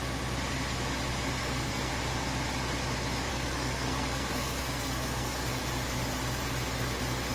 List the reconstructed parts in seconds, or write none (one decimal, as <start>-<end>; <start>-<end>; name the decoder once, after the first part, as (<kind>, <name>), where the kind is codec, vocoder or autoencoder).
1.4-1.9 (codec, SNAC); 3.3-5.6